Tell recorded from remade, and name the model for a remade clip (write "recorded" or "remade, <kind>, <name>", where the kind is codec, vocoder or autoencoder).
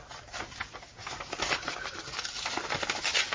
recorded